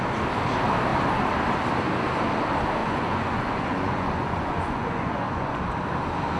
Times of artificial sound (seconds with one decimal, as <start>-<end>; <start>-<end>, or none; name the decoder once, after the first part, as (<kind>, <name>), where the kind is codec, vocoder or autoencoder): 2.8-5.6 (vocoder, Vocos)